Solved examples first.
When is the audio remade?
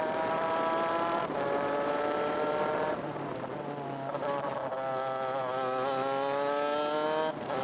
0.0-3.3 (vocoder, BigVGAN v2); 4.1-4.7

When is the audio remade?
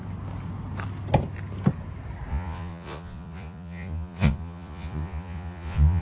2.3-6.0 (vocoder, Vocos)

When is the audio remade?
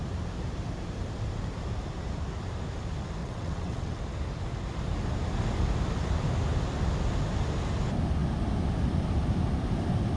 3.2-4.0 (vocoder, WaveNeXt)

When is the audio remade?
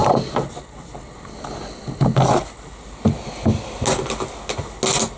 none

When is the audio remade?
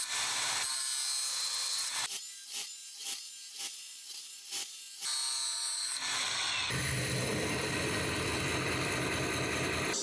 1.3-2.0 (vocoder, WaveNeXt)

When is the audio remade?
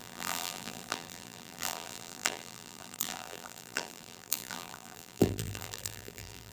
0.0-6.5 (vocoder, BigVGAN v2)